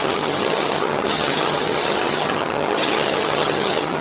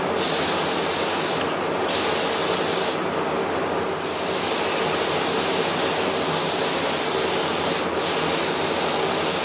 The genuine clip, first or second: second